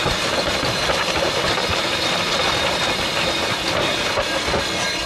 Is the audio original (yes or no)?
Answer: yes